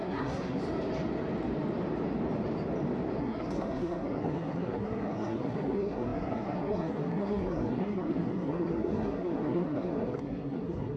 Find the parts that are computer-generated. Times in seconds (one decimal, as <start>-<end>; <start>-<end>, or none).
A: 0.0-0.6; 3.2-11.0